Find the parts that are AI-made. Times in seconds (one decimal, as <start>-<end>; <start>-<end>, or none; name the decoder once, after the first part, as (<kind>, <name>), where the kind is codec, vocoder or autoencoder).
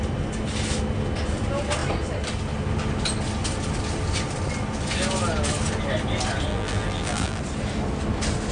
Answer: 6.5-7.4 (vocoder, BigVGAN v2)